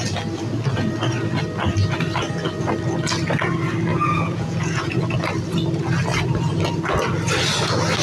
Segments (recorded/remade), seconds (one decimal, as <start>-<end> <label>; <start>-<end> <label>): 0.0-3.9 recorded; 3.9-5.0 remade; 5.0-8.0 recorded